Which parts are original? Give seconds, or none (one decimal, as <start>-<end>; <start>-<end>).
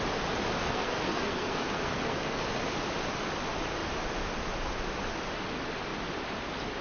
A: 0.0-0.6; 2.6-6.8